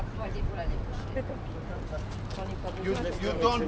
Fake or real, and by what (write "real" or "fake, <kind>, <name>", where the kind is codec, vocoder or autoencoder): real